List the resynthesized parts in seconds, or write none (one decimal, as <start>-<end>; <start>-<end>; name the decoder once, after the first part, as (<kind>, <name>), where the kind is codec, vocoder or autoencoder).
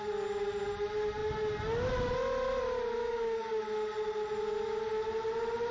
3.0-3.5 (codec, DAC)